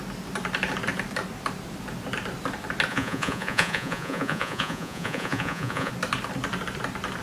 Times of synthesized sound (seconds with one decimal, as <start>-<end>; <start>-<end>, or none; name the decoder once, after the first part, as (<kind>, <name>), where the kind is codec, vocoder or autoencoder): 2.9-5.9 (vocoder, Vocos)